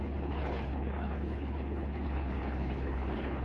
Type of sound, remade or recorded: remade